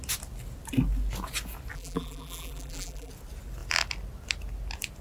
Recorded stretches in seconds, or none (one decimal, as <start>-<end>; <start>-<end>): 0.0-1.7; 3.1-5.0